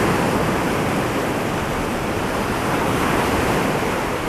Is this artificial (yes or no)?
no